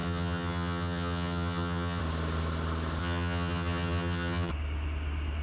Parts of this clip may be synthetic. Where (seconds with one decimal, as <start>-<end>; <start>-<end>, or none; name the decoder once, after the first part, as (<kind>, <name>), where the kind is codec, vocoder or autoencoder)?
0.0-2.0 (vocoder, HiFi-GAN); 3.0-4.5